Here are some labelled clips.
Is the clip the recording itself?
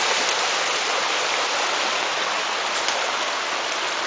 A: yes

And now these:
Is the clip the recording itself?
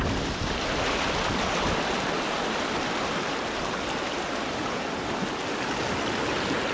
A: yes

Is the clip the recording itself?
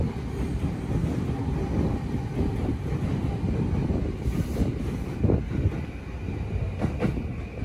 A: yes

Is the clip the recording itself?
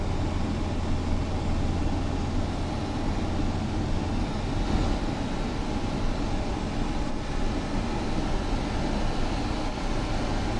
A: yes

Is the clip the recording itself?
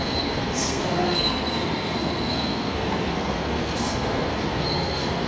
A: no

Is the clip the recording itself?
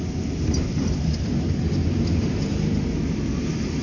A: yes